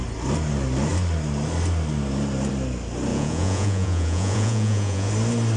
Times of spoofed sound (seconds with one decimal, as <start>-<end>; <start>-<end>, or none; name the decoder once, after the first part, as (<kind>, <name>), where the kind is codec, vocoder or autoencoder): 3.1-5.1 (vocoder, Vocos)